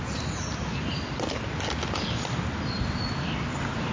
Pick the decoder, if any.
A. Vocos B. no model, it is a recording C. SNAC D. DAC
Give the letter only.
B